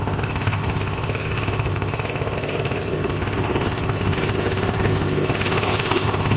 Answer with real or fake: fake